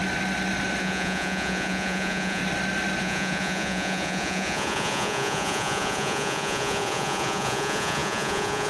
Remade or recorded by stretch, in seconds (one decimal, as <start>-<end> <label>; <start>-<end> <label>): 0.0-0.8 recorded; 0.8-2.4 remade; 2.4-3.0 recorded; 3.0-8.7 remade